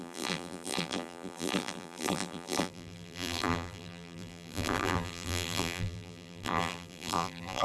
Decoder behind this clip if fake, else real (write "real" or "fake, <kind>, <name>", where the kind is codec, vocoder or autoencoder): fake, vocoder, BigVGAN v2